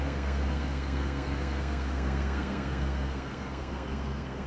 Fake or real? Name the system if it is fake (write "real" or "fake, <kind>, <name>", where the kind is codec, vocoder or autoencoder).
fake, codec, SNAC